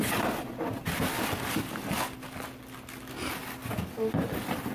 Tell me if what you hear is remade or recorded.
recorded